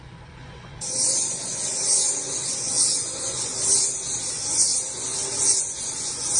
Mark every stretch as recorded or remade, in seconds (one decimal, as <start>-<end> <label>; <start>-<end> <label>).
0.0-3.5 remade; 3.5-4.3 recorded; 4.3-4.7 remade; 4.7-5.6 recorded; 5.6-6.4 remade